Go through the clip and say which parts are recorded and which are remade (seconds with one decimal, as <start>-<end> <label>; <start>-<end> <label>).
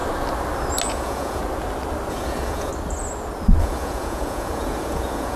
0.0-0.9 recorded; 0.9-1.4 remade; 1.4-2.1 recorded; 2.1-2.7 remade; 2.7-3.6 recorded; 3.6-5.4 remade